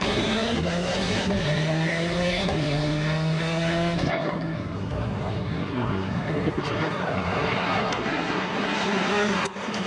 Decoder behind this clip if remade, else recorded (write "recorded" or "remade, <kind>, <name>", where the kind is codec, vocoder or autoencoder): remade, codec, SNAC